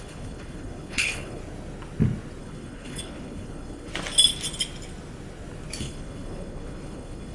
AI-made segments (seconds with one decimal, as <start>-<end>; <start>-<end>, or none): 0.0-1.4; 2.4-3.9; 5.8-7.3